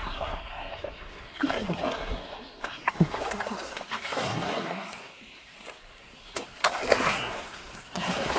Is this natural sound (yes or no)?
no